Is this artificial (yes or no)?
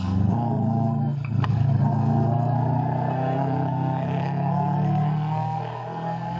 yes